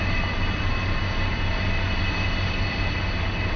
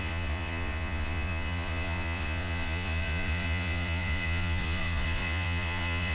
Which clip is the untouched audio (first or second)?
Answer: first